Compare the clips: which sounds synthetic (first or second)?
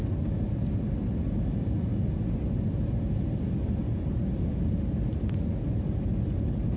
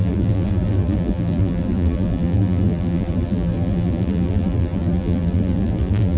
second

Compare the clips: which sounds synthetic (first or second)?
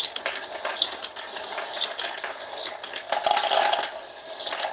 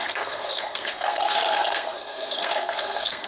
second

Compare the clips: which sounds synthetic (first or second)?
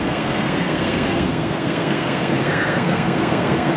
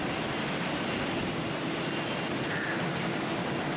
first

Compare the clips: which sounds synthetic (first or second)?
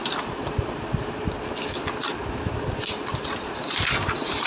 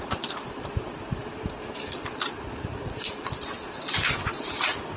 second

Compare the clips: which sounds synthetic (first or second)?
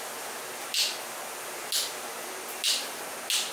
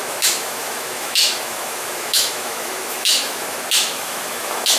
second